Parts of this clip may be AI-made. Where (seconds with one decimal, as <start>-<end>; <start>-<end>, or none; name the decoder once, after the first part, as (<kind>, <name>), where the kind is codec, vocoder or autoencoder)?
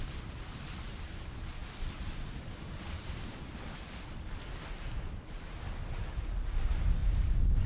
7.0-7.7 (vocoder, BigVGAN v2)